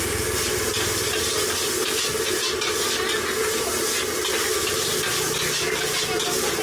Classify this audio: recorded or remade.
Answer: recorded